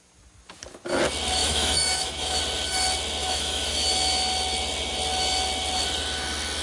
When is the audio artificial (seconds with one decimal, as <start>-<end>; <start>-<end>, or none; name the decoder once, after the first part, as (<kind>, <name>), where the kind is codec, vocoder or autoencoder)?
1.4-2.4 (autoencoder, DAC-VAE); 3.2-3.7